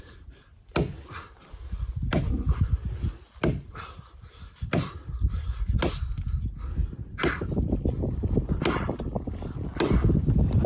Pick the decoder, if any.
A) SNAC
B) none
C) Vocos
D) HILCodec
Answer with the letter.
B